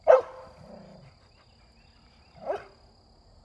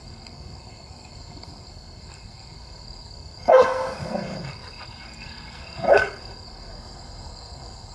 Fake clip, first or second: second